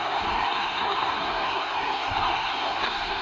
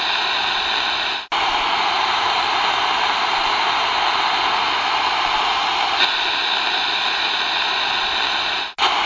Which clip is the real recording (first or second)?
second